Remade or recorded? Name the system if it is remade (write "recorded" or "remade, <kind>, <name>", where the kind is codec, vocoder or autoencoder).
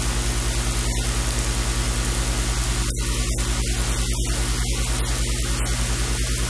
recorded